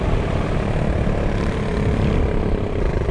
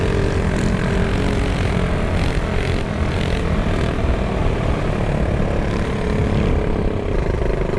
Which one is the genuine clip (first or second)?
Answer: second